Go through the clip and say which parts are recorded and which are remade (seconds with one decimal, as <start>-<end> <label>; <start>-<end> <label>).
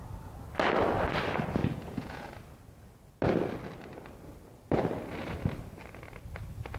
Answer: 0.0-1.6 recorded; 1.6-2.3 remade; 2.3-6.8 recorded